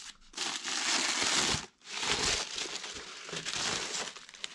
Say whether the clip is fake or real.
real